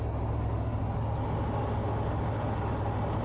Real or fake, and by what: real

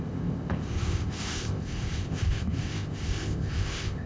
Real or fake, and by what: fake, codec, ZipCodec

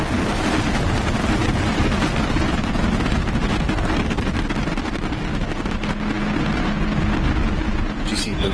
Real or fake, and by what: real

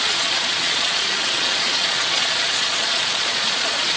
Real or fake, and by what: fake, vocoder, Vocos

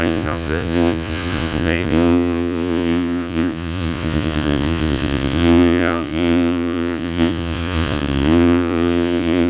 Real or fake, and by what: fake, vocoder, Vocos